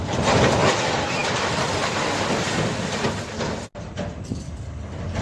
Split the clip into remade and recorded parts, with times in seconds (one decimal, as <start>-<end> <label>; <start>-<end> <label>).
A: 0.0-5.2 recorded